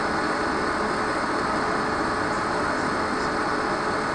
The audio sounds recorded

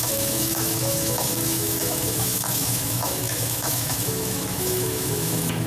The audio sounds remade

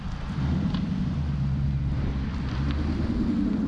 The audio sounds remade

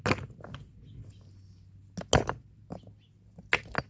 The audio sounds recorded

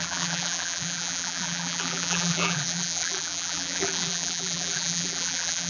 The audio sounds remade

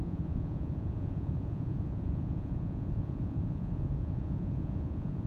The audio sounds remade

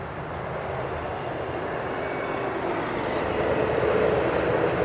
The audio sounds recorded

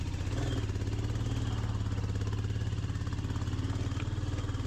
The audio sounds recorded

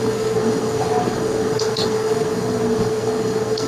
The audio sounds remade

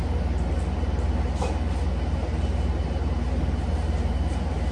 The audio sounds recorded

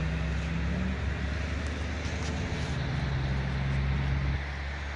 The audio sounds recorded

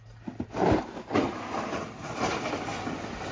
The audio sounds recorded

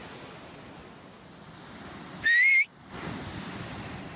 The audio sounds recorded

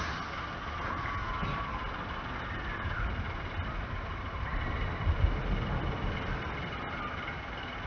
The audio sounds recorded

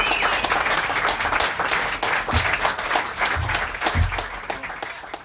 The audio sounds recorded